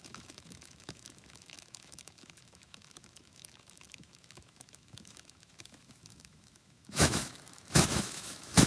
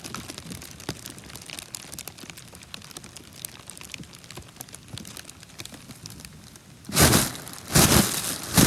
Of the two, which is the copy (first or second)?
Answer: first